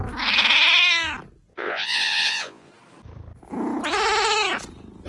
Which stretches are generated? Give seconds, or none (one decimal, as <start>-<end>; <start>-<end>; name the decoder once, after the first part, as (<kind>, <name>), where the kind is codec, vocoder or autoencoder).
1.5-2.7 (vocoder, Vocos)